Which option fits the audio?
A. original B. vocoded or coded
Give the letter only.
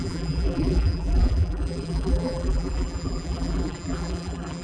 B